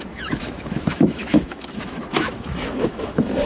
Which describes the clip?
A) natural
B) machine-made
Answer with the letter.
B